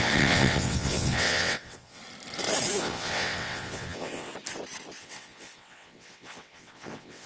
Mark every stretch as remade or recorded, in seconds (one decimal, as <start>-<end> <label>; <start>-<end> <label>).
0.0-2.0 remade; 2.0-2.8 recorded; 2.8-4.3 remade; 4.3-5.0 recorded; 5.0-7.3 remade